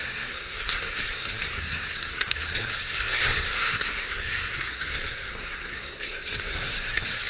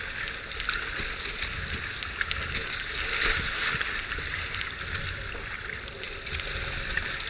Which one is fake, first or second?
first